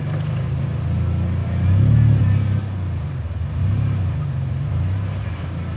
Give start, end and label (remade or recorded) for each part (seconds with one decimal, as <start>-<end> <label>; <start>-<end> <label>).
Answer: 0.0-3.6 recorded; 3.6-5.8 remade